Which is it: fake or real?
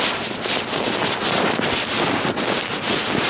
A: real